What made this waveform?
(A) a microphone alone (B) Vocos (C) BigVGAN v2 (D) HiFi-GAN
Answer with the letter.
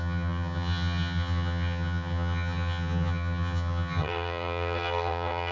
D